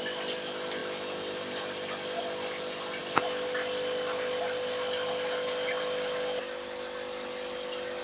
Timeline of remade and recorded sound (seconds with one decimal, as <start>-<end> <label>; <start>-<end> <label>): 0.0-8.0 recorded